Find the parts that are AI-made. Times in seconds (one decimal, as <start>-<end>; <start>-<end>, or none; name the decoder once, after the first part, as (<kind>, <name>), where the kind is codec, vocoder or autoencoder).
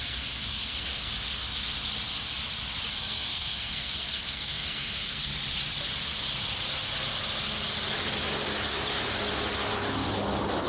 0.0-1.1 (codec, SNAC); 2.9-5.3